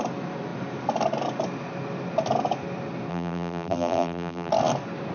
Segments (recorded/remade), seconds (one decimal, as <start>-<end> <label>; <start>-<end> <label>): 0.0-3.1 recorded; 3.1-4.5 remade; 4.5-5.1 recorded

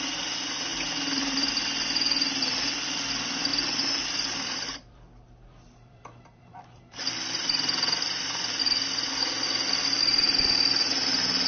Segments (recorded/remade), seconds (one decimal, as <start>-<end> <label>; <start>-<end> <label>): 0.0-0.7 recorded; 0.7-1.5 remade; 1.5-3.5 recorded; 3.5-8.6 remade; 8.6-11.5 recorded

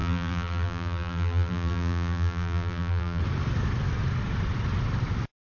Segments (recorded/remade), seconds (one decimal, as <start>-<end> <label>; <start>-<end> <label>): 0.0-3.2 remade; 3.2-5.4 recorded

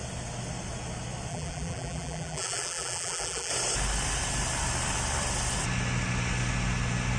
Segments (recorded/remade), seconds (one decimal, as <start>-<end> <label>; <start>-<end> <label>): 0.0-1.3 recorded; 1.3-3.5 remade; 3.5-7.2 recorded

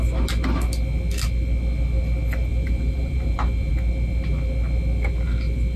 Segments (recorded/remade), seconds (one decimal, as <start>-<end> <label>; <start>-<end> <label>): 0.0-2.5 recorded; 2.5-3.7 remade; 3.7-5.8 recorded

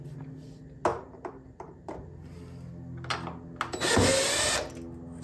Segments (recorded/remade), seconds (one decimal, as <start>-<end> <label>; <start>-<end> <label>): 0.0-0.9 recorded; 0.9-2.0 remade; 2.0-5.2 recorded

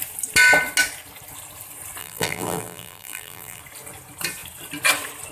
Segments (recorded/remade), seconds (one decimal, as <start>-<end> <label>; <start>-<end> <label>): 0.0-2.0 recorded; 2.0-3.6 remade; 3.6-5.3 recorded